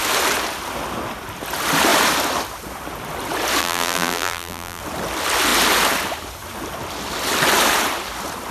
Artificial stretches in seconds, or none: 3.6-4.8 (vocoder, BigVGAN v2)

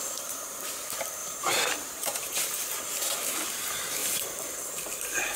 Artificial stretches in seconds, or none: 1.2-2.8 (vocoder, BigVGAN v2)

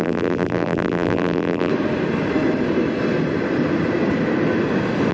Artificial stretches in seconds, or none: 0.0-1.7 (vocoder, BigVGAN v2)